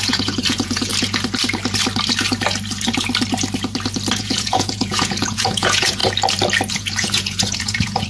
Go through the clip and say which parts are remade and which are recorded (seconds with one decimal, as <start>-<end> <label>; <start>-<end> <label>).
0.0-0.9 remade; 0.9-4.2 recorded; 4.2-6.0 remade; 6.0-6.7 recorded; 6.7-8.1 remade